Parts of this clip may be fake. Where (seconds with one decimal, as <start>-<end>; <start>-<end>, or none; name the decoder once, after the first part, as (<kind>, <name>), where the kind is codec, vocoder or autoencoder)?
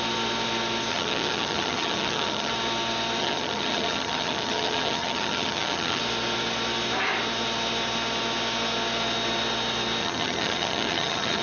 0.9-2.5 (vocoder, HiFi-GAN); 3.2-6.0; 10.0-11.4